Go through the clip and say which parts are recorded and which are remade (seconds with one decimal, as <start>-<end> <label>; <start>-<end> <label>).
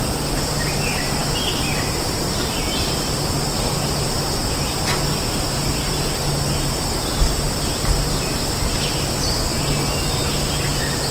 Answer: 0.0-11.1 recorded